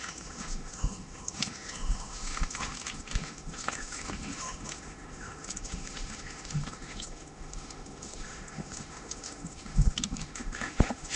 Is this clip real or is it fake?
fake